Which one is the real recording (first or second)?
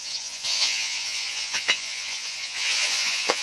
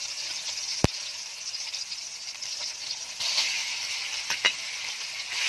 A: second